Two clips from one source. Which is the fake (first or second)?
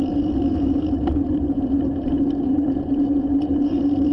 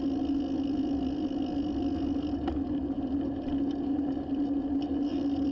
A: first